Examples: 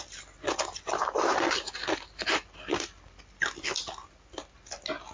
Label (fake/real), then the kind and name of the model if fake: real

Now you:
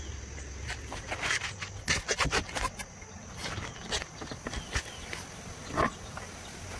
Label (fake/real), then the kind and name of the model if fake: real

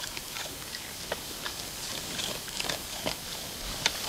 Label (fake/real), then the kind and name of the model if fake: fake, codec, DAC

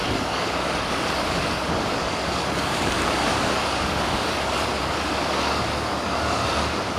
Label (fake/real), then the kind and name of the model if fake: fake, codec, DAC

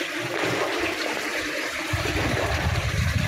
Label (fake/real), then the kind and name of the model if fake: fake, vocoder, BigVGAN v2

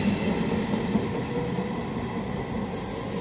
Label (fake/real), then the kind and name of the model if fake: real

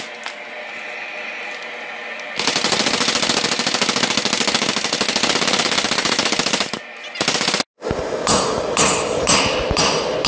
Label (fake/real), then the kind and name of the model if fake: real